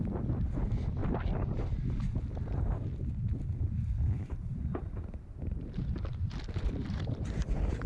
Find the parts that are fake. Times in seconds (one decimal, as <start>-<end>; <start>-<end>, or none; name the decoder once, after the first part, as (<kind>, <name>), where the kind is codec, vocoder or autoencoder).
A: none